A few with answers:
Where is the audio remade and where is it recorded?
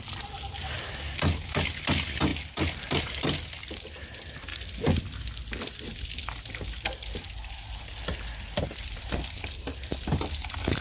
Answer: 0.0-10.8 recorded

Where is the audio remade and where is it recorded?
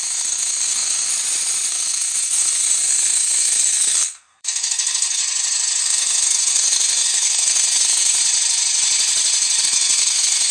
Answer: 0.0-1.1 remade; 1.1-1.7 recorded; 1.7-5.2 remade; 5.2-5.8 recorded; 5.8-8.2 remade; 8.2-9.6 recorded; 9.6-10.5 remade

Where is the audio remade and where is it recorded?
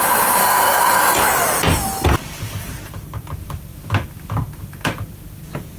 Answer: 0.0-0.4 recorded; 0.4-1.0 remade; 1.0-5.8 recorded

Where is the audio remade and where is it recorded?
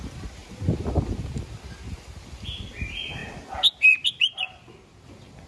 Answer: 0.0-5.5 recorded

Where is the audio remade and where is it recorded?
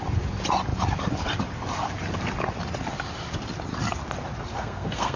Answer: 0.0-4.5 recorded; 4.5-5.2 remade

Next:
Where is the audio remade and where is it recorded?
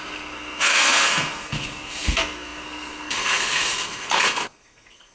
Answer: 0.0-5.1 remade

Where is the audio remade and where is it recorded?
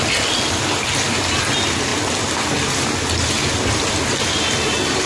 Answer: 0.0-5.1 recorded